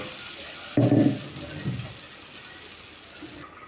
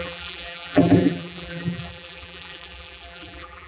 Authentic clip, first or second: first